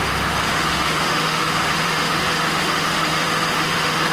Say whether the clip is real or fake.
fake